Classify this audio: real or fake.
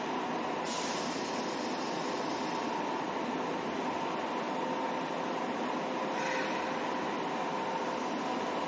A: real